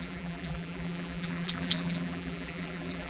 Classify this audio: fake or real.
fake